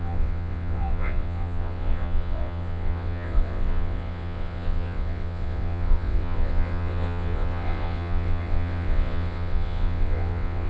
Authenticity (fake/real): fake